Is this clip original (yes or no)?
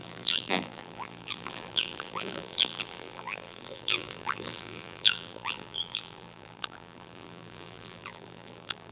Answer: no